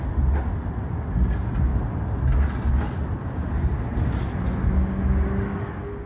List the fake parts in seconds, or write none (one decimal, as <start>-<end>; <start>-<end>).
none